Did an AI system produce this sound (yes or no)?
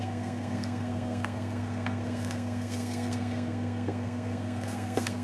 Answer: yes